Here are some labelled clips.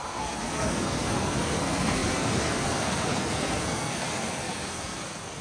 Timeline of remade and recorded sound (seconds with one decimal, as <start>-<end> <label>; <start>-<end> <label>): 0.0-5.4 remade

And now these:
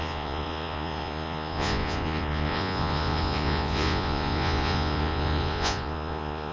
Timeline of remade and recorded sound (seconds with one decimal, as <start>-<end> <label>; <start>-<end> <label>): 0.0-6.5 remade

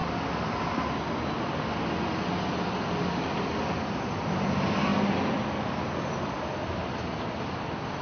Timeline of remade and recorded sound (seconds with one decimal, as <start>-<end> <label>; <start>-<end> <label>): 0.0-8.0 recorded

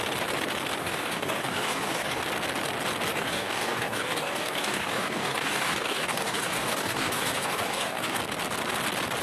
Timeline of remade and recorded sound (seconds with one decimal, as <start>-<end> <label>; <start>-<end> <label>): 0.0-0.8 recorded; 0.8-2.2 remade; 2.2-3.1 recorded; 3.1-8.2 remade; 8.2-9.2 recorded